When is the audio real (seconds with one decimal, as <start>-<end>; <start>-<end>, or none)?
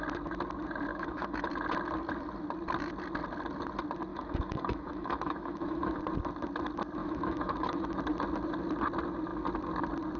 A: 0.0-0.9; 1.5-4.1; 6.0-7.0; 8.0-10.2